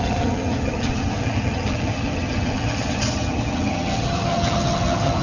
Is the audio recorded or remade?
remade